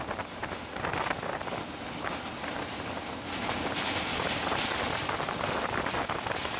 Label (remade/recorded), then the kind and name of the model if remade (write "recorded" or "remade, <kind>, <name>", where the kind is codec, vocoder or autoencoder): recorded